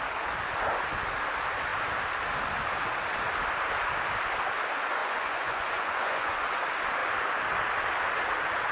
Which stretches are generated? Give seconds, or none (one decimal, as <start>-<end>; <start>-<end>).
5.0-6.6